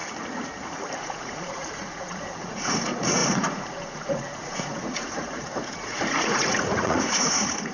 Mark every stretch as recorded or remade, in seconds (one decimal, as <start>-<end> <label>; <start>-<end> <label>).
0.0-1.0 recorded; 1.0-7.7 remade